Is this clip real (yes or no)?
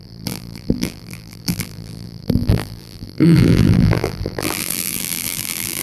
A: no